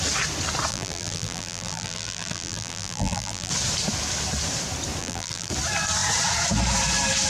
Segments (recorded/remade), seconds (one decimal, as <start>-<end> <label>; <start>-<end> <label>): 0.0-0.7 recorded; 0.7-3.5 remade; 3.5-5.0 recorded; 5.0-5.5 remade; 5.5-7.3 recorded